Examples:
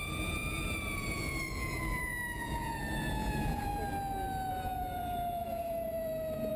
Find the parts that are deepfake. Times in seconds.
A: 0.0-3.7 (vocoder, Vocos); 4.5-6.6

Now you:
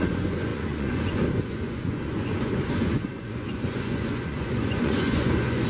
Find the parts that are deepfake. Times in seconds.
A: 0.0-5.7 (vocoder, Vocos)

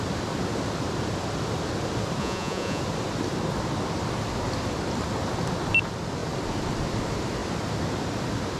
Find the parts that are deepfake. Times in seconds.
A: 2.2-2.8 (vocoder, Vocos)

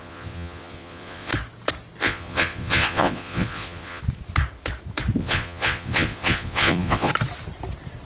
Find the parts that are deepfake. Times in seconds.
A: 0.0-1.3 (vocoder, Vocos); 2.0-4.0; 5.2-7.1

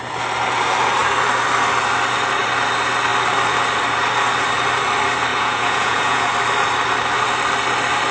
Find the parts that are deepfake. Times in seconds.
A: 5.3-6.3 (vocoder, Vocos)